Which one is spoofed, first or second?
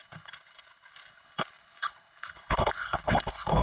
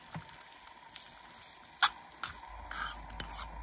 first